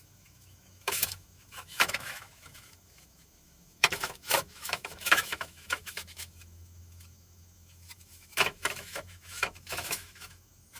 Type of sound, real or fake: fake